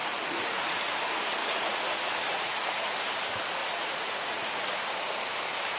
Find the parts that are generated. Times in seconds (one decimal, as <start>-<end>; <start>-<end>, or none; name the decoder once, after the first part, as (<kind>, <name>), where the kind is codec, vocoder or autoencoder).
0.0-0.9 (vocoder, Vocos); 1.4-2.9; 3.6-4.7